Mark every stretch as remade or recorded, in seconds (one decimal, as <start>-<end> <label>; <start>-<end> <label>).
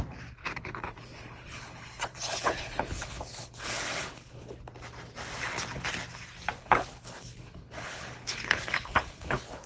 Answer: 0.0-0.4 recorded; 0.4-4.6 remade; 4.6-6.6 recorded; 6.6-9.7 remade